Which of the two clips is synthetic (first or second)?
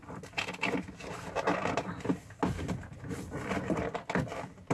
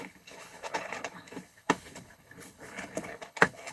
second